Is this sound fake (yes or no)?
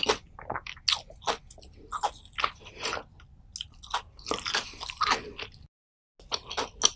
no